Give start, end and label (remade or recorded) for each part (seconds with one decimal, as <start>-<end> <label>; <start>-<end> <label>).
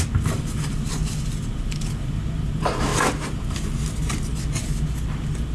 0.0-5.5 recorded